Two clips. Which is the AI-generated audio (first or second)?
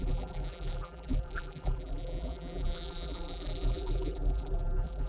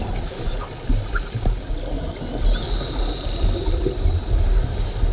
first